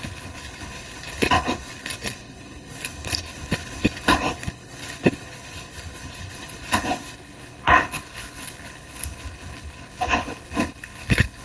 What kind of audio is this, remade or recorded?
remade